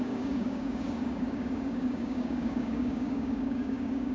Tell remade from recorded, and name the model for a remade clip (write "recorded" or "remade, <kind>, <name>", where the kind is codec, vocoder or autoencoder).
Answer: remade, codec, DAC